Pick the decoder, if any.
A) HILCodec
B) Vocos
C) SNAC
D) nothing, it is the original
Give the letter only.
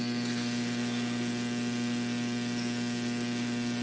D